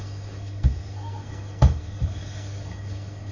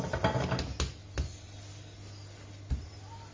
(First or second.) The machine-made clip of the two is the first